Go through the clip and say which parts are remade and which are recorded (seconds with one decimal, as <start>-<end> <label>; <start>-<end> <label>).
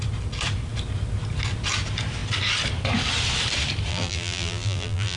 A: 0.0-3.9 recorded; 3.9-5.2 remade